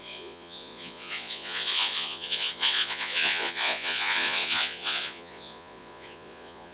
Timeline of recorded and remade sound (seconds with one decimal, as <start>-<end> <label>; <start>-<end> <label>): 0.0-6.7 remade